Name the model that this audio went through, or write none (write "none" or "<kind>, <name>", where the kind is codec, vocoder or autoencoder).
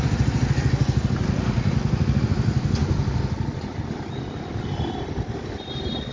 none